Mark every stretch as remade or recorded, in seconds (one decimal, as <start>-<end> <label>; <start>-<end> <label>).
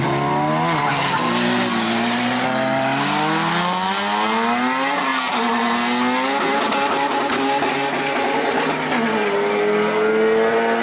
0.0-10.8 recorded